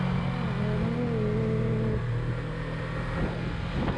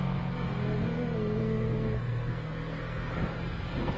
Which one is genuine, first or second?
first